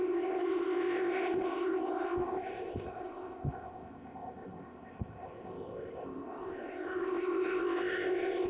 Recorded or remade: remade